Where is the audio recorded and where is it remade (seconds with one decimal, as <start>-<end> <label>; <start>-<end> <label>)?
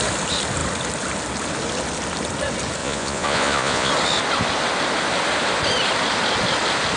0.0-2.8 recorded; 2.8-3.9 remade; 3.9-7.0 recorded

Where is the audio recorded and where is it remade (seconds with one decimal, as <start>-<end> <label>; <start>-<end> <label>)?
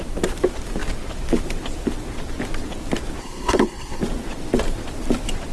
0.0-3.2 recorded; 3.2-4.0 remade; 4.0-5.5 recorded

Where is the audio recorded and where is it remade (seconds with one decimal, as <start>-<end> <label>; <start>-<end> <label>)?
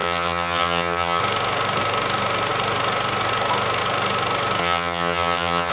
0.0-1.2 remade; 1.2-4.6 recorded; 4.6-5.7 remade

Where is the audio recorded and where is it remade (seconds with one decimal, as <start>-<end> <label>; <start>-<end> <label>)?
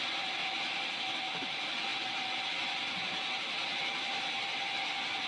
0.0-5.3 recorded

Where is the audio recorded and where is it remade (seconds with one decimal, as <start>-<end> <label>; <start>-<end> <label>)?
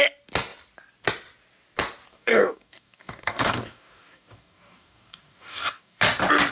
0.0-2.1 recorded; 2.1-6.0 remade; 6.0-6.5 recorded